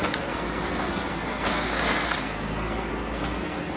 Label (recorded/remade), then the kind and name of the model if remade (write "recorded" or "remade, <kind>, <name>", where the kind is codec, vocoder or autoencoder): remade, codec, SNAC